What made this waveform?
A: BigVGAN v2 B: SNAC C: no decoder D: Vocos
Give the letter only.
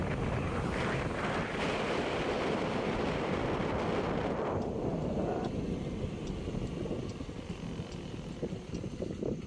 C